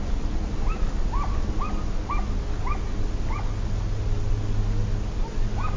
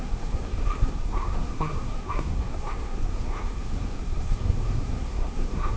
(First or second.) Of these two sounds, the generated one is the second